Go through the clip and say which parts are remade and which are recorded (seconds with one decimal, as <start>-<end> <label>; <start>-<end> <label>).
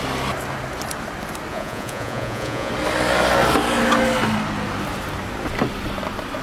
0.0-1.5 recorded; 1.5-2.7 remade; 2.7-6.4 recorded